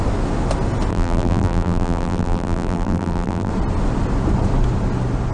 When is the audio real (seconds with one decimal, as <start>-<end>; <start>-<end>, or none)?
0.0-0.9; 3.5-5.3